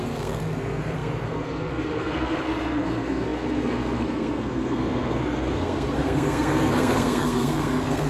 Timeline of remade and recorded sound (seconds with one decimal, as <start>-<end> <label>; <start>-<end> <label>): 0.0-8.1 remade